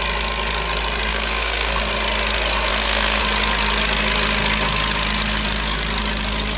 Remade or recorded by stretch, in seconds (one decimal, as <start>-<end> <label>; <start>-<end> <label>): 0.0-1.1 recorded; 1.1-1.8 remade; 1.8-2.7 recorded; 2.7-3.2 remade; 3.2-6.6 recorded